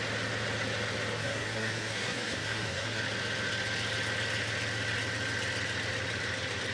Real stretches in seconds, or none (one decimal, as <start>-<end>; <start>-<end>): 0.0-1.1; 3.0-6.7